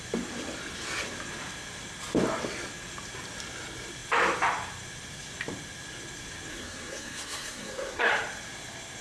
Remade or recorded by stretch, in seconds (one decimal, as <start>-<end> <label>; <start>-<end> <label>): 0.0-6.5 recorded; 6.5-8.1 remade; 8.1-9.0 recorded